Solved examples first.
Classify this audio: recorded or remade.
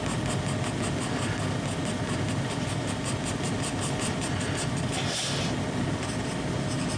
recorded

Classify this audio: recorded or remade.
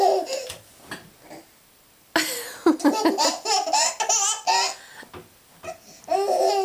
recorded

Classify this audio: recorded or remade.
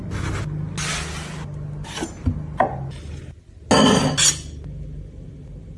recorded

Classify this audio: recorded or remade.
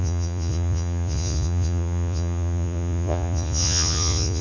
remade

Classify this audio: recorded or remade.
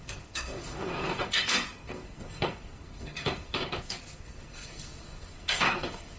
remade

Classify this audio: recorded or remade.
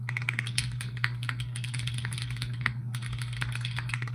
remade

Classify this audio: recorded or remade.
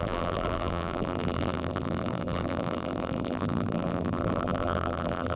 remade